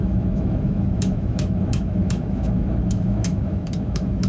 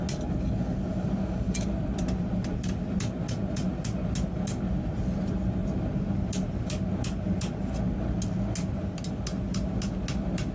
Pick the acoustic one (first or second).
second